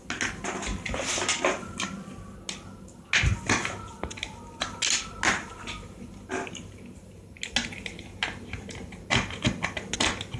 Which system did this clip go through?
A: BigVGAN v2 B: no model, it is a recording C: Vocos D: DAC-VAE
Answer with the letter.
B